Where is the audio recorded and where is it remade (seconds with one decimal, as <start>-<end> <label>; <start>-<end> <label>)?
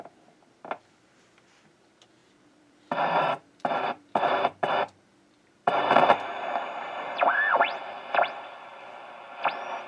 0.0-2.2 recorded; 2.2-7.4 remade; 7.4-9.9 recorded